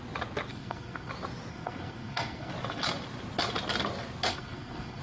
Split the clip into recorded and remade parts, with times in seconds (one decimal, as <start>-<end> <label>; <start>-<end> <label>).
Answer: 0.0-0.5 recorded; 0.5-1.1 remade; 1.1-1.5 recorded; 1.5-2.5 remade; 2.5-4.3 recorded; 4.3-5.0 remade